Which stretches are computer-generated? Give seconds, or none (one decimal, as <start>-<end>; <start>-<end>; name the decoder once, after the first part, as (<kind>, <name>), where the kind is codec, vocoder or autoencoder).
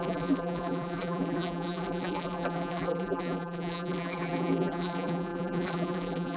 0.0-6.4 (vocoder, BigVGAN v2)